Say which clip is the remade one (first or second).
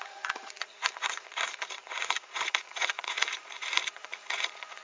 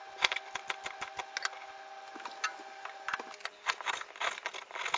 first